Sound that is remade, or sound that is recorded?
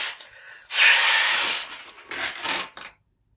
recorded